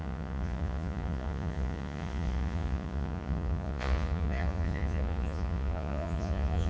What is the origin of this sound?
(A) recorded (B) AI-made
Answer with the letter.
B